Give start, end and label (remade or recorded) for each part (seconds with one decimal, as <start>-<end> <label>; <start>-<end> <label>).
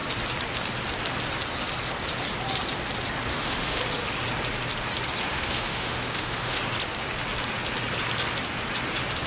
0.0-3.3 recorded; 3.3-3.8 remade; 3.8-5.3 recorded; 5.3-6.6 remade; 6.6-9.3 recorded